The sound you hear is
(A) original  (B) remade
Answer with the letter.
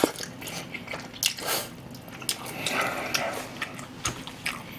A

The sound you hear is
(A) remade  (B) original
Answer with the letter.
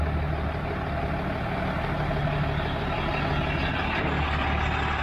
B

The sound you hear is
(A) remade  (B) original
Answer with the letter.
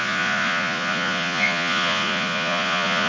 A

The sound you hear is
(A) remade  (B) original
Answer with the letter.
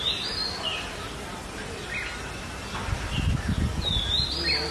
B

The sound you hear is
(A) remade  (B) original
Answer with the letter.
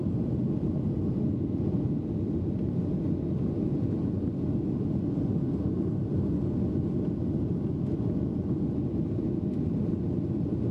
B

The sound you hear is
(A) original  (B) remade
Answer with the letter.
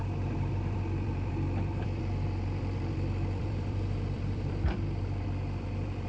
B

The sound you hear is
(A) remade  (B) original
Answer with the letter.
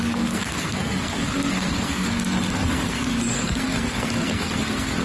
A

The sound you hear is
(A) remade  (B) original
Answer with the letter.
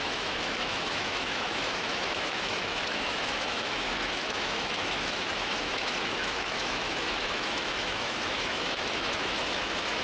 A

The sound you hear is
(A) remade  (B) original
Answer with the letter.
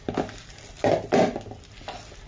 B